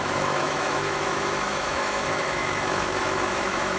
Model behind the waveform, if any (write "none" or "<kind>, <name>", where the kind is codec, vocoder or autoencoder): autoencoder, DAC-VAE